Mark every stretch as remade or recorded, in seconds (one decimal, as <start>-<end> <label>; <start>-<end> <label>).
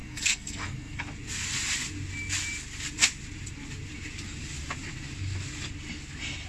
0.0-1.0 remade; 1.0-6.5 recorded